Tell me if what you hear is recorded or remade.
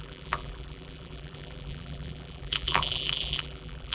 remade